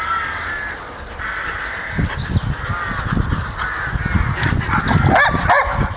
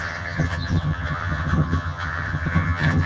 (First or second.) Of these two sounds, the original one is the first